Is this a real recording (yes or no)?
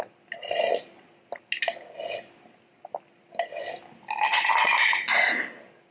yes